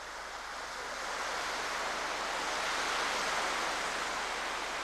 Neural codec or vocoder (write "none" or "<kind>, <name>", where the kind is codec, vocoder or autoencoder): none